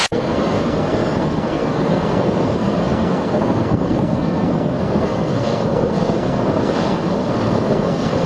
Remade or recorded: remade